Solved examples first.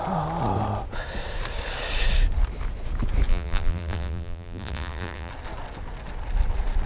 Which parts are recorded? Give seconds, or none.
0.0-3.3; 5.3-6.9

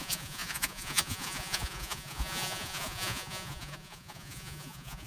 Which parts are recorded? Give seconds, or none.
none

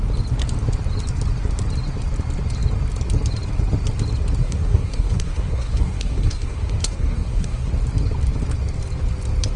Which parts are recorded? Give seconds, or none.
0.0-4.4; 7.7-9.6

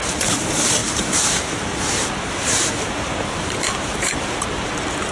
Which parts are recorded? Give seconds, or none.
none